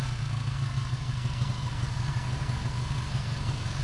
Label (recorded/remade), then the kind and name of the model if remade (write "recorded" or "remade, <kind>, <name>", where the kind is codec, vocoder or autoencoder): remade, codec, SNAC